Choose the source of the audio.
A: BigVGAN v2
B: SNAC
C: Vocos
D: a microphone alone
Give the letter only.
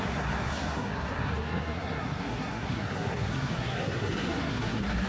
B